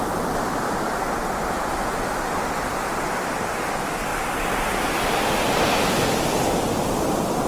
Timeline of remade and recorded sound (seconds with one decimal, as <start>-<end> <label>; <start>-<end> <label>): 0.0-7.5 recorded